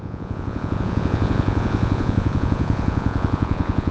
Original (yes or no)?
no